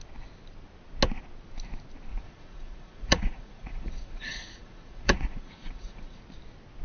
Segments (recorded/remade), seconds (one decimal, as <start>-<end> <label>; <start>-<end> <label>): 0.0-2.1 recorded; 2.1-6.2 remade; 6.2-6.8 recorded